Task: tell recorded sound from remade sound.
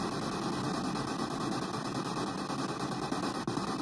recorded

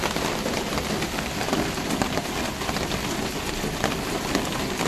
recorded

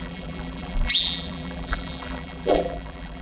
remade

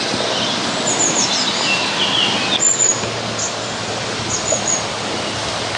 recorded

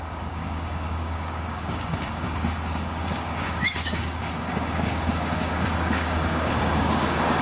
remade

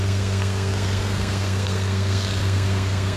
remade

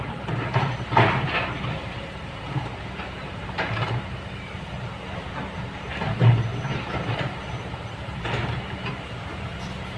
remade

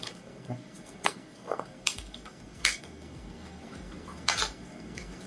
remade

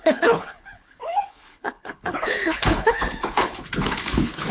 remade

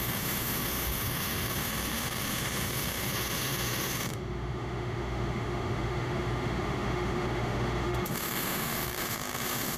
remade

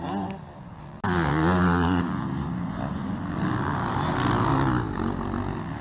recorded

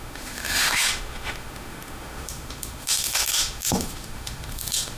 remade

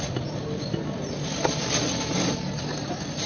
recorded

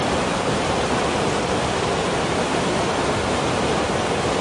recorded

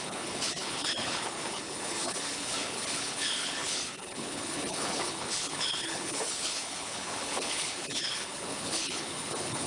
remade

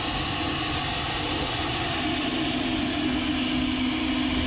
recorded